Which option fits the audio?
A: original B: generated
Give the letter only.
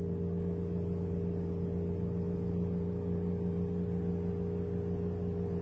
A